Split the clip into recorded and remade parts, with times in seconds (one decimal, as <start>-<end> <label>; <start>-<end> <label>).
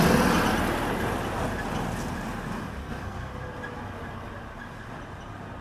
0.0-2.8 recorded; 2.8-3.3 remade; 3.3-5.6 recorded